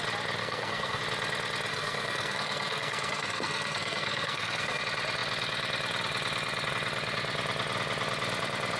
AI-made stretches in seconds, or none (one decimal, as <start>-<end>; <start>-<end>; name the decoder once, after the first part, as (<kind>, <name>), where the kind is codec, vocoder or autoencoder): 0.4-1.0 (codec, SNAC); 1.7-4.8